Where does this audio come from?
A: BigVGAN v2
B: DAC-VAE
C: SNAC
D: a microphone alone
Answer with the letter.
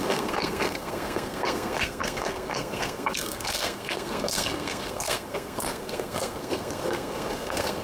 C